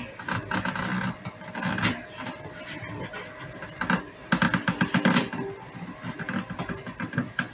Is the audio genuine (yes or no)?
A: yes